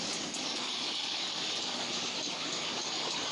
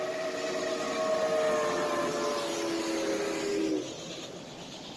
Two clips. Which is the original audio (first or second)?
second